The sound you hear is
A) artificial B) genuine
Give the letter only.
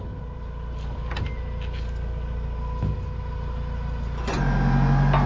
B